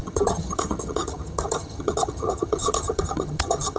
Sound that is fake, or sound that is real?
fake